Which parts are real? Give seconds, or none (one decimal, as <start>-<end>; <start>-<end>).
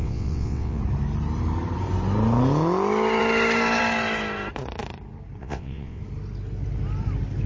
0.8-5.4; 6.0-7.5